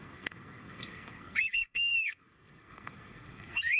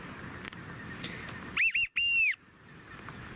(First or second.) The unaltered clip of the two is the second